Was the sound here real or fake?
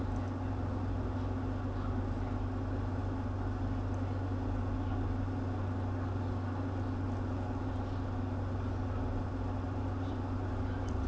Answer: real